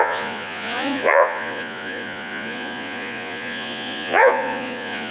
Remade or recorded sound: remade